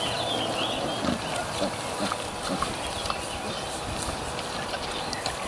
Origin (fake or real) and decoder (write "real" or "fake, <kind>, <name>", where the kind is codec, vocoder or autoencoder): real